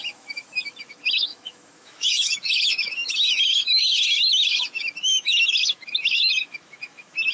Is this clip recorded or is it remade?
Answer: remade